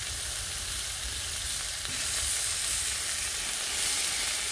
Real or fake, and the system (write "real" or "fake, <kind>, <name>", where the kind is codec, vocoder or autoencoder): real